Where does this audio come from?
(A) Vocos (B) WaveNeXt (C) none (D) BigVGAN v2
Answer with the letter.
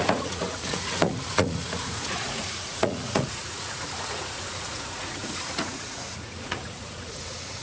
A